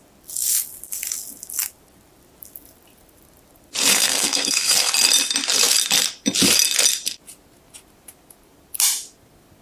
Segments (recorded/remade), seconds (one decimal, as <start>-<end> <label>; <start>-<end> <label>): 0.0-3.9 recorded; 3.9-4.9 remade; 4.9-9.6 recorded